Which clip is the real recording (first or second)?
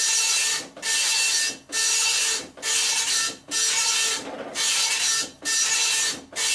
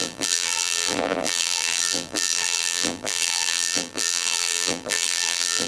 first